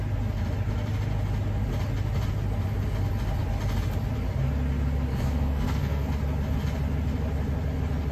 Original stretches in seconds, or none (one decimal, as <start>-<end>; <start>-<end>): 0.0-5.1; 6.1-8.1